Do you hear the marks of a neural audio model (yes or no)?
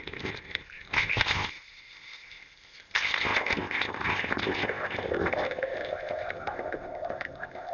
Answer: yes